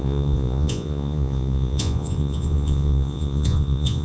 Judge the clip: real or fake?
fake